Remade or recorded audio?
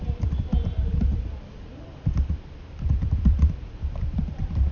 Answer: remade